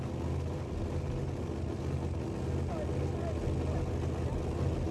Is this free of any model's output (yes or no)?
yes